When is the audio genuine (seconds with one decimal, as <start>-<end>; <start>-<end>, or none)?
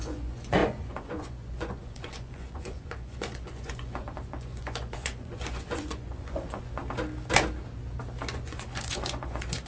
6.8-8.3